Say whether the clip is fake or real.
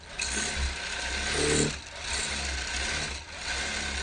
real